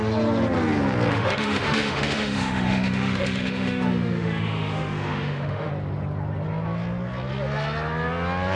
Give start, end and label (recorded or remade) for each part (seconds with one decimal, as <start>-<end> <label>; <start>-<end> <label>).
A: 0.0-1.1 recorded; 1.1-5.7 remade; 5.7-8.6 recorded